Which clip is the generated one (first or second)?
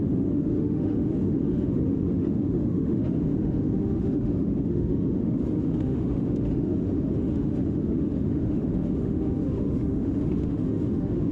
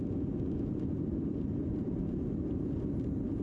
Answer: first